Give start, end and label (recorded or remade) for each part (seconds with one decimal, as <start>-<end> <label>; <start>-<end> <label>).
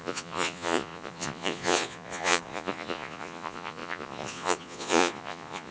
0.0-5.7 remade